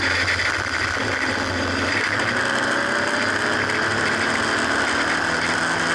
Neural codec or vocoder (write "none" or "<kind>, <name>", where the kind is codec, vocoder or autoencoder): none